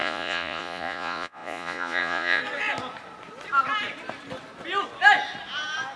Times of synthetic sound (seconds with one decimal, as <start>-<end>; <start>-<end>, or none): 0.0-2.4